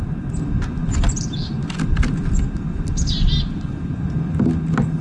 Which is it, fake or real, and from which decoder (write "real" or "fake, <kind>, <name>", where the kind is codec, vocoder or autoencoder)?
real